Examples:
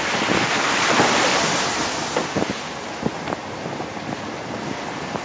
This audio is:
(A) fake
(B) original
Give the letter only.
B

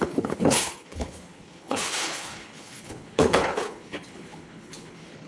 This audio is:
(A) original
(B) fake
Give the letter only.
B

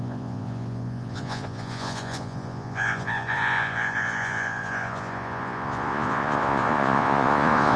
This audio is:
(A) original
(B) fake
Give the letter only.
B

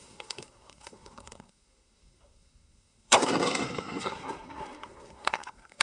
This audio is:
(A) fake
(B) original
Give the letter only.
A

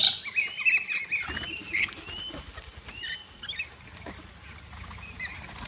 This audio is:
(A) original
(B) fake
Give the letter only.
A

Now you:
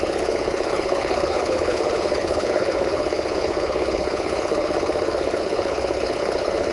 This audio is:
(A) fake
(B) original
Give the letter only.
A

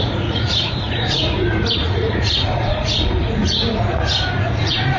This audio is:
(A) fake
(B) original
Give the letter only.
A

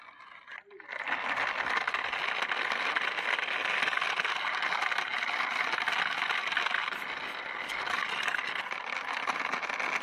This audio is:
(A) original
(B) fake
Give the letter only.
A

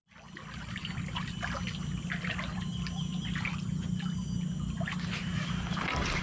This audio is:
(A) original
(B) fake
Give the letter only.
A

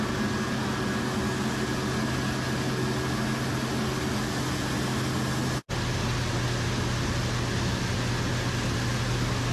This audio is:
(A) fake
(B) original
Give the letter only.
B